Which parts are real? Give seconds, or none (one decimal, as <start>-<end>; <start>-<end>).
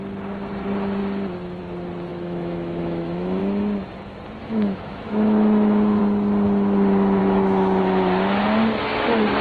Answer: 0.0-2.1; 3.4-4.4; 6.0-7.2; 7.8-9.4